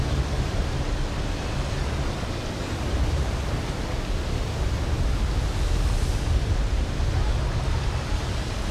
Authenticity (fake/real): real